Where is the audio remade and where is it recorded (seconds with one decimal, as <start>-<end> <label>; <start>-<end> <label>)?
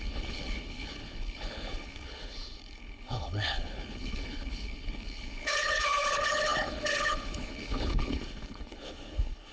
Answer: 0.0-9.5 remade